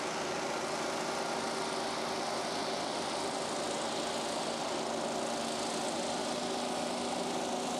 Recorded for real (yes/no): yes